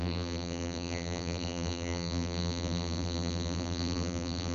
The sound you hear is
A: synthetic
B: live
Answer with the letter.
A